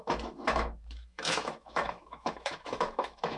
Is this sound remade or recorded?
remade